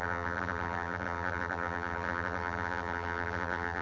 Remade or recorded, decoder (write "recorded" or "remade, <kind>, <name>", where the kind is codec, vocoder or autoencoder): remade, vocoder, BigVGAN v2